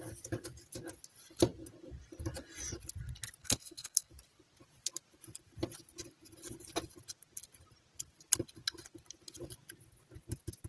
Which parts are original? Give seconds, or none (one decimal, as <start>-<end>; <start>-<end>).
0.0-3.4; 4.1-10.7